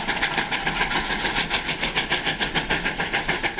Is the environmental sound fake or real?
real